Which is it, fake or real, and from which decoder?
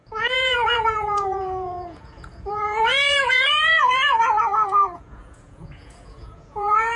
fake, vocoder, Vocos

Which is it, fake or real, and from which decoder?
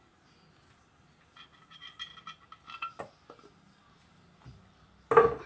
real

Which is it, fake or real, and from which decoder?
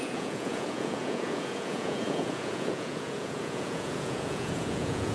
fake, vocoder, Vocos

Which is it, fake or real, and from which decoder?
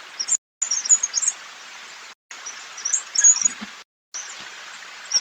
real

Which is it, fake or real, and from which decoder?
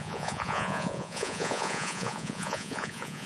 fake, vocoder, Vocos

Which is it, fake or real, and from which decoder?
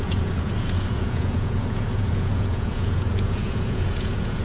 fake, vocoder, Vocos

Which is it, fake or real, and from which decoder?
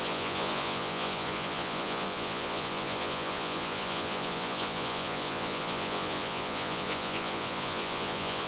fake, vocoder, Vocos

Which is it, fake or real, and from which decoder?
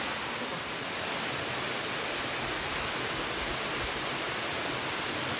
real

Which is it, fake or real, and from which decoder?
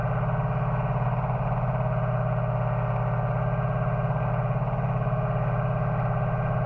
real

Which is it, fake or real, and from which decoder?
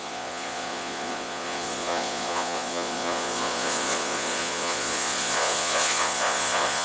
fake, vocoder, Vocos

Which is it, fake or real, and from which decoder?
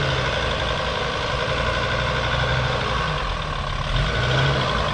real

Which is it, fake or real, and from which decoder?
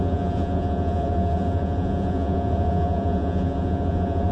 fake, vocoder, Vocos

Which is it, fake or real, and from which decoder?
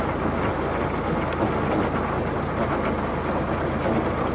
real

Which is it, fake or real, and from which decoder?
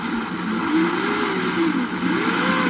real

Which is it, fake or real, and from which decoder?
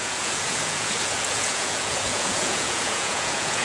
fake, vocoder, Vocos